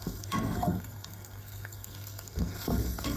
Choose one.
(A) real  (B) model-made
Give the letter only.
B